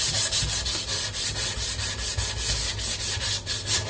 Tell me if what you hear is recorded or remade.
recorded